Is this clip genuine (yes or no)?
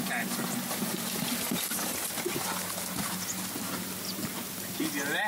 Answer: yes